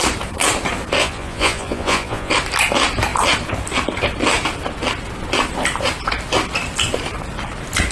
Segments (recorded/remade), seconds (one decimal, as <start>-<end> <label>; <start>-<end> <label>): 0.0-1.0 recorded; 1.0-2.3 remade; 2.3-7.9 recorded